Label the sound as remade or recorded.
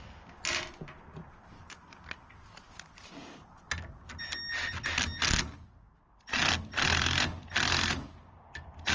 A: recorded